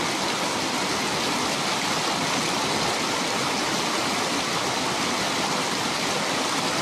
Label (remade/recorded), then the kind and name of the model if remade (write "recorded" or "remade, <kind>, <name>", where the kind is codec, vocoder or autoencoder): recorded